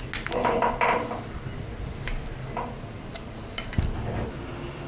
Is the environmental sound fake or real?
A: real